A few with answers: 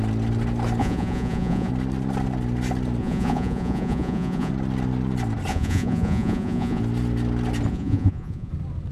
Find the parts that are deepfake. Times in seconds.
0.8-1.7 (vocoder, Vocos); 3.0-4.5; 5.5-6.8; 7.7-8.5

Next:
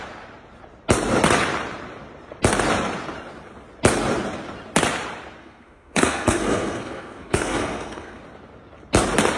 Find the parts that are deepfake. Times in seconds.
5.4-8.2 (codec, SNAC)

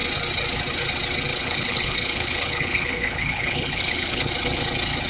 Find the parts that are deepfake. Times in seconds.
1.3-4.3 (codec, HILCodec)

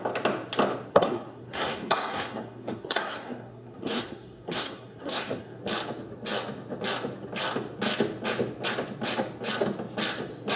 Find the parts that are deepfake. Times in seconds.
0.9-5.6 (codec, SNAC)